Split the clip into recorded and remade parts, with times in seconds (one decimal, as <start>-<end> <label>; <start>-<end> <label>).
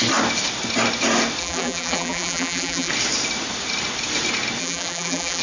0.0-1.4 recorded; 1.4-2.9 remade; 2.9-4.6 recorded; 4.6-5.4 remade